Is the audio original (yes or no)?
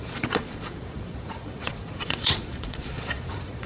no